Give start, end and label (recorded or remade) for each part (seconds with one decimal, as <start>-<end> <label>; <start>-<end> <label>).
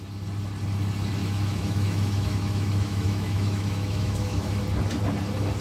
0.0-1.2 recorded; 1.2-4.6 remade; 4.6-5.6 recorded